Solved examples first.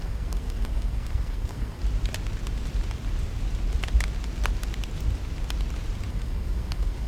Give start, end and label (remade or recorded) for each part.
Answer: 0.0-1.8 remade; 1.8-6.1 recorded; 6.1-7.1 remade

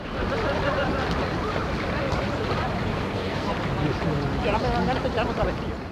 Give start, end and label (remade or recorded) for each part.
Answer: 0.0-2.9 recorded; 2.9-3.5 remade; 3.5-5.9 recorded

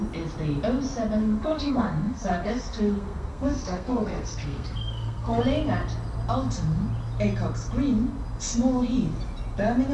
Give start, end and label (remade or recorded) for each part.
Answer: 0.0-1.2 recorded; 1.2-5.4 remade; 5.4-9.9 recorded